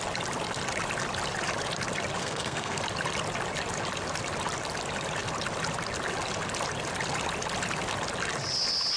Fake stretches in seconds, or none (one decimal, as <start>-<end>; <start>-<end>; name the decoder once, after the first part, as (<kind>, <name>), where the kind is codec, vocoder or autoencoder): 2.2-2.8 (codec, SNAC)